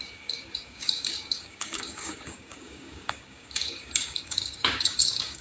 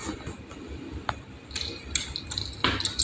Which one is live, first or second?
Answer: second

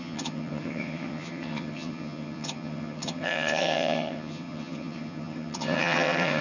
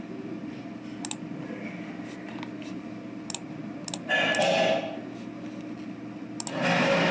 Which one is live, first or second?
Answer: second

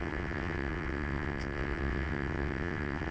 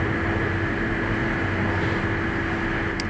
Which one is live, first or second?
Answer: second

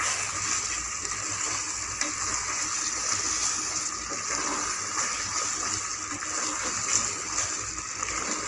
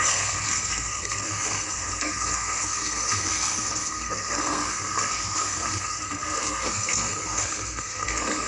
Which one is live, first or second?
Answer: first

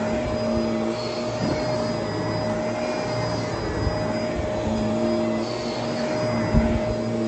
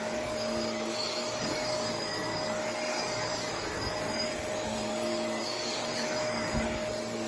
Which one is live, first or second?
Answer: first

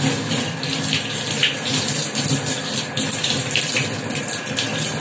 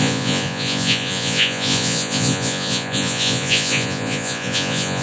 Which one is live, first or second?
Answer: first